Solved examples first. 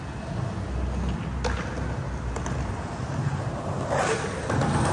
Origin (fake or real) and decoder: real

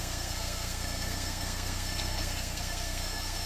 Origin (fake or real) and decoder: fake, codec, SNAC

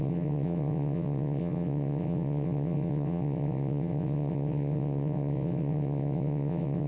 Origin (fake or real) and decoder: fake, vocoder, WaveNeXt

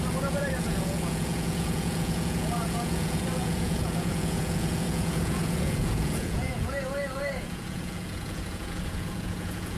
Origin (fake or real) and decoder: fake, vocoder, Vocos